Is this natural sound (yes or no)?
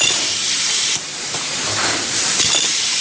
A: no